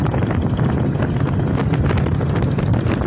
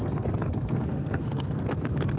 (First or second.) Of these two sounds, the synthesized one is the second